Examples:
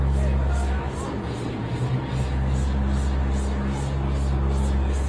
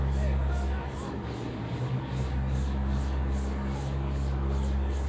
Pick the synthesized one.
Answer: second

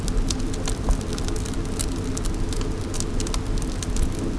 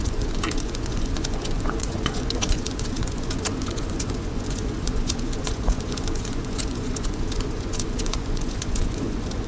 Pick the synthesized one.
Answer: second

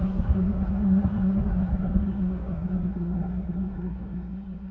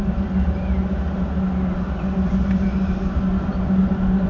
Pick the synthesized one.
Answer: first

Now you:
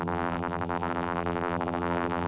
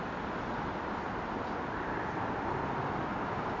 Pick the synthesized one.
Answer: first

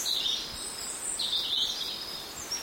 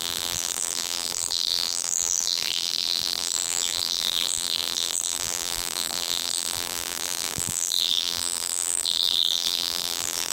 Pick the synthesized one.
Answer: second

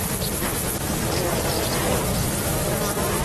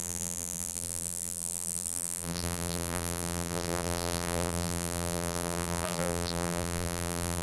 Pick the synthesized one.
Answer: second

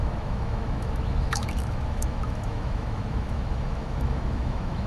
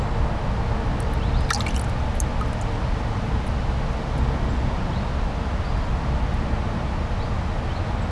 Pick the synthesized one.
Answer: first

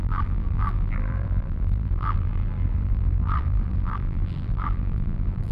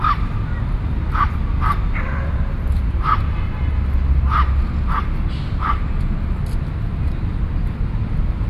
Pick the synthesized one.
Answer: first